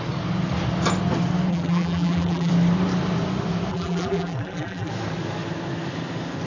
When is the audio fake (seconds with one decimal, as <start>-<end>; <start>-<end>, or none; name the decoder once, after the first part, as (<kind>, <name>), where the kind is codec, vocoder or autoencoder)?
1.5-2.5 (vocoder, BigVGAN v2); 3.7-4.9